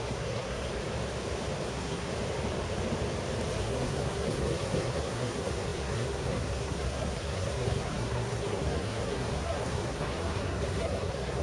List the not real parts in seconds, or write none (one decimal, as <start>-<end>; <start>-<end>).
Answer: 0.0-0.7; 1.7-2.1; 3.6-11.4